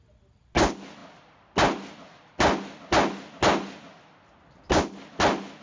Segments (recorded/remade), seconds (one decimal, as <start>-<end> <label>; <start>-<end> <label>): 0.0-5.6 recorded